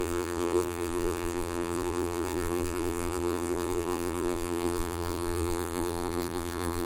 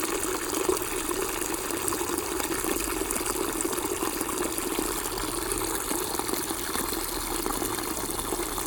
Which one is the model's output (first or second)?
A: first